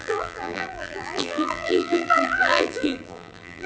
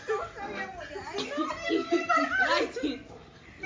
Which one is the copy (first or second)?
first